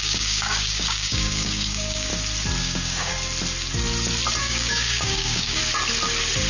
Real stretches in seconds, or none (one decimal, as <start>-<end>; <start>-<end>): 2.1-2.6; 3.1-4.4; 5.6-6.5